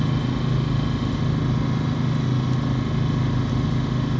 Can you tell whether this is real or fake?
real